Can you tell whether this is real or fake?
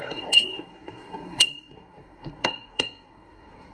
fake